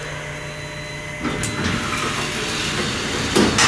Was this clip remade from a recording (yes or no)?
no